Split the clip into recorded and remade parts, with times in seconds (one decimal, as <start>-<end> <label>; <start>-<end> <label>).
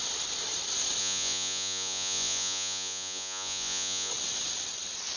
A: 0.0-1.0 recorded; 1.0-4.1 remade; 4.1-5.2 recorded